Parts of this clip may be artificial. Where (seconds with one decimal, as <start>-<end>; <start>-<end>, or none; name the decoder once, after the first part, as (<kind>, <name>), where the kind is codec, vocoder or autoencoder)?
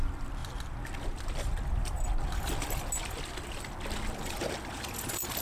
none